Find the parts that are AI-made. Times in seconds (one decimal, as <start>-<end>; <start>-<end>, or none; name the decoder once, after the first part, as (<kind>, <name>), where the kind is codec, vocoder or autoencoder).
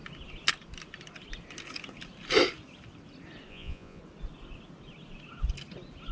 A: 3.5-4.0 (vocoder, Vocos)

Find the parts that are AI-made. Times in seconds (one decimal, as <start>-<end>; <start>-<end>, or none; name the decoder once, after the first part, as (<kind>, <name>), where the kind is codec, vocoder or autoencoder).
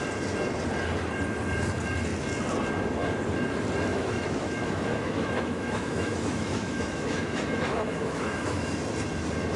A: 3.9-8.7 (autoencoder, DAC-VAE)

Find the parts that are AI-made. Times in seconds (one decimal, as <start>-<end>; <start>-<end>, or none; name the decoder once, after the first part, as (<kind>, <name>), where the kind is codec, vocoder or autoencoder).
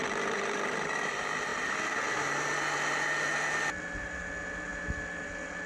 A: none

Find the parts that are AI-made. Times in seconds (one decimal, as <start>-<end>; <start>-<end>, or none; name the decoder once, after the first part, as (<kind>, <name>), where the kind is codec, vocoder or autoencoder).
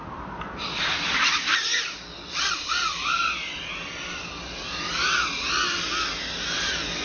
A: none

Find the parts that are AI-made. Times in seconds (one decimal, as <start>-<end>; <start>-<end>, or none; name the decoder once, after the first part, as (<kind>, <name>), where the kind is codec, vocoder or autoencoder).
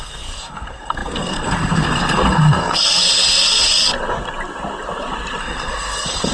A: 0.0-3.9 (codec, SNAC); 5.4-6.3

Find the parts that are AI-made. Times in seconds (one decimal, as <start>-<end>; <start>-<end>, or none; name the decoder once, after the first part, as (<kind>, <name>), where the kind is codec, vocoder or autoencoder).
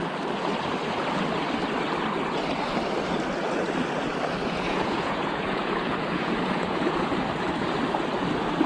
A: 4.4-7.2 (vocoder, Vocos)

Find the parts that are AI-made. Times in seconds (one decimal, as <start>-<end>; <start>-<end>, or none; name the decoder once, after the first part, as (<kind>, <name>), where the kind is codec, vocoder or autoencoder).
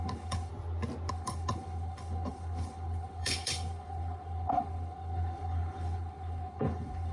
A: 0.0-0.5 (codec, HILCodec); 1.1-7.1